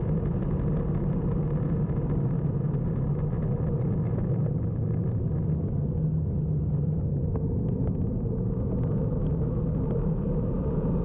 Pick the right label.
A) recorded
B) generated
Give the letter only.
A